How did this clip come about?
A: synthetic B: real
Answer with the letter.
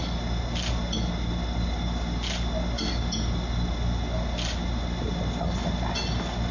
B